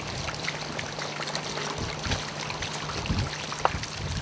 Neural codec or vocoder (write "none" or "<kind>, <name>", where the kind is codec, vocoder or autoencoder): none